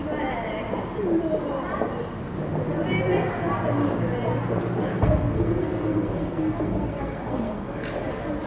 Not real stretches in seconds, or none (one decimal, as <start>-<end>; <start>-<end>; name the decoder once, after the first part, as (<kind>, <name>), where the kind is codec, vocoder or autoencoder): 4.9-7.9 (codec, SNAC)